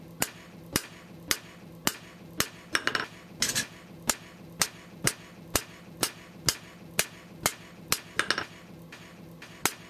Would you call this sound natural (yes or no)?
yes